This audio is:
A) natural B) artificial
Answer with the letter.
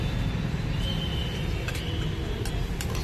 A